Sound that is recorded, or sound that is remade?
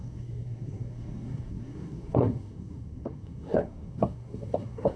remade